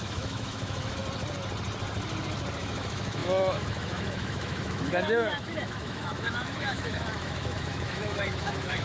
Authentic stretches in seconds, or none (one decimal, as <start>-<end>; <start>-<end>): 1.0-2.6